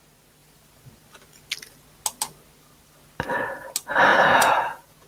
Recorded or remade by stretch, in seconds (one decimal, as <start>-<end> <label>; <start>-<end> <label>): 0.0-4.1 recorded; 4.1-5.1 remade